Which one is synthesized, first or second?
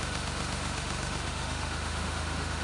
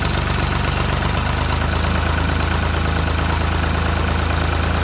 first